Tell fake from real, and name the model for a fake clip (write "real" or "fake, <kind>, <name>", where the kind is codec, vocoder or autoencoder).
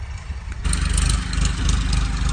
real